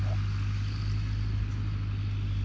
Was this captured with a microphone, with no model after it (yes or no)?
yes